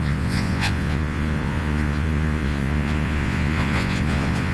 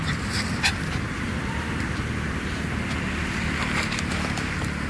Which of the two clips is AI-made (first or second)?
first